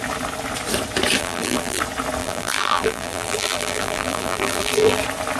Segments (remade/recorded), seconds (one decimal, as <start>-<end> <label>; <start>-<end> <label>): 0.0-1.2 recorded; 1.2-1.8 remade; 1.8-2.2 recorded; 2.2-5.0 remade; 5.0-5.4 recorded